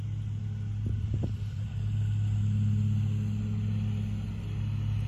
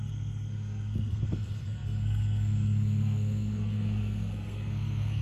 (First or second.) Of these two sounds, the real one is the first